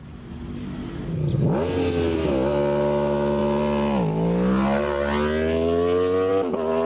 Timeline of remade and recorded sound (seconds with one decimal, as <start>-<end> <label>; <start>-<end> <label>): 0.0-6.9 recorded